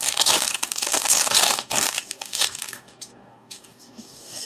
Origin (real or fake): fake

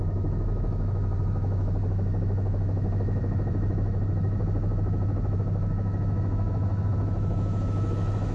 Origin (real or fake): fake